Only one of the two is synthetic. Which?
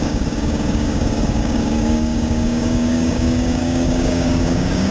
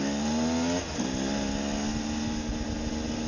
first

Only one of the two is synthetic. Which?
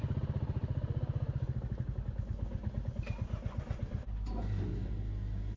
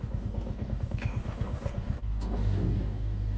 second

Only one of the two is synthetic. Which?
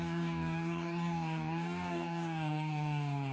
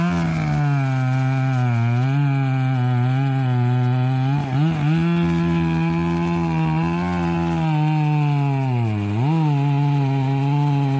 first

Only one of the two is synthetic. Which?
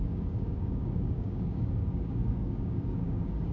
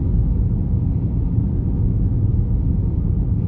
first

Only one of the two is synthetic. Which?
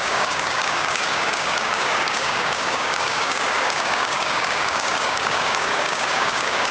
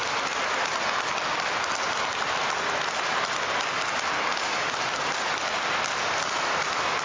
first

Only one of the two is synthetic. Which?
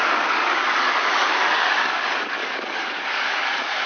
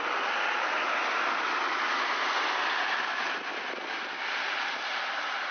first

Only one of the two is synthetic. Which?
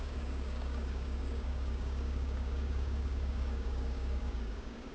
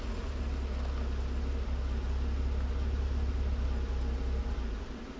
first